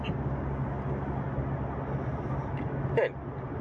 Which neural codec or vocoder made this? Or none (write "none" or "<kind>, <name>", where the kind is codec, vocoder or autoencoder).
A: none